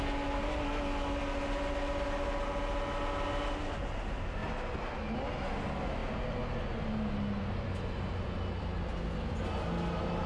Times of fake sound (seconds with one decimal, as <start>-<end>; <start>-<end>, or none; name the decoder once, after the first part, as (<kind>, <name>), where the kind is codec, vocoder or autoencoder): none